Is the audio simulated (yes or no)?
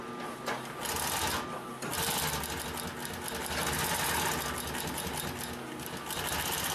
no